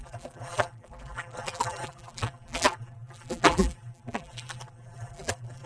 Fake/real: fake